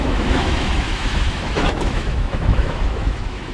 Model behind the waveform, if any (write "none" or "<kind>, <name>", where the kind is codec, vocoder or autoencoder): autoencoder, DAC-VAE